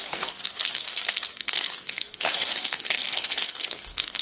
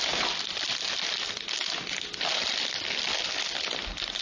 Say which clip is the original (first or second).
second